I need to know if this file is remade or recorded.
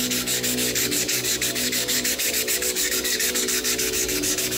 remade